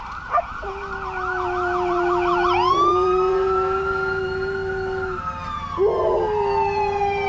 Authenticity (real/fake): real